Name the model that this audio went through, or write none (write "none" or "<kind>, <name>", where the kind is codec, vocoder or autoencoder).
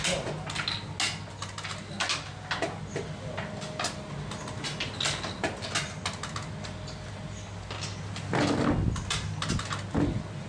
none